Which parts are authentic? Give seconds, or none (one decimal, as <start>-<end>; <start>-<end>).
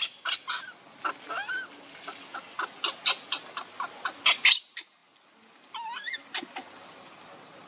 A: 0.0-7.7